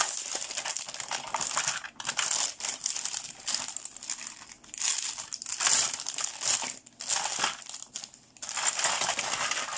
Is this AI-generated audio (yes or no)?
no